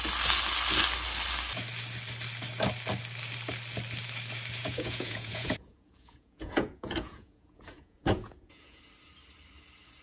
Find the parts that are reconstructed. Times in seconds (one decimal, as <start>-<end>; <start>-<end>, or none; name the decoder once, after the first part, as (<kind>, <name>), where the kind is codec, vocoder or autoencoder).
4.6-8.8 (vocoder, Vocos)